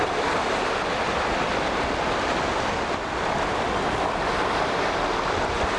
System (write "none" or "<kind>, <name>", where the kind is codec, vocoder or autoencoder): none